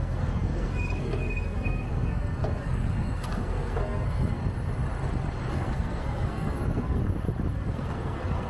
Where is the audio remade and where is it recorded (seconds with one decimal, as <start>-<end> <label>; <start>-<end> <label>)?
0.0-4.4 remade; 4.4-5.5 recorded; 5.5-7.0 remade; 7.0-7.5 recorded; 7.5-8.5 remade